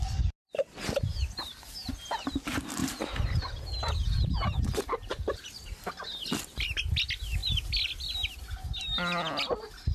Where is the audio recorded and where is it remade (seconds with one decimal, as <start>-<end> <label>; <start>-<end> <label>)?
0.0-1.1 recorded; 1.1-1.9 remade; 1.9-2.8 recorded; 2.8-5.9 remade; 5.9-9.9 recorded